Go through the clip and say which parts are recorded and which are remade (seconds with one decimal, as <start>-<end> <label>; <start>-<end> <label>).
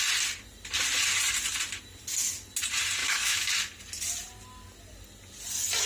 0.0-3.0 recorded; 3.0-3.5 remade; 3.5-5.9 recorded